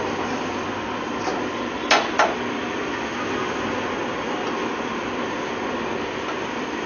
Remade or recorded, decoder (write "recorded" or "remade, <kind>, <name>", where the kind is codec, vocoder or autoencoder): recorded